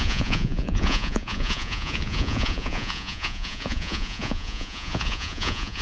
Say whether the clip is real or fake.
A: fake